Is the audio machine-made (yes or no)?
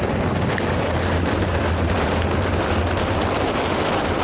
no